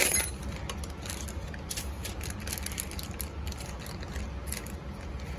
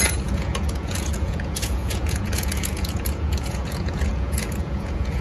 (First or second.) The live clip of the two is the first